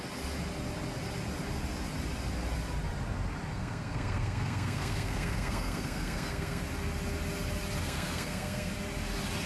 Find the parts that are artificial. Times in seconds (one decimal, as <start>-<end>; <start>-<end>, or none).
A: 3.5-6.6; 7.8-8.7